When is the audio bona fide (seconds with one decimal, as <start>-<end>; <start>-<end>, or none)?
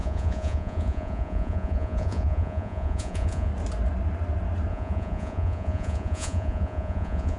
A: 3.5-4.7